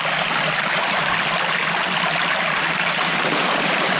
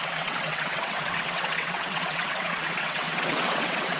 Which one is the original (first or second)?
first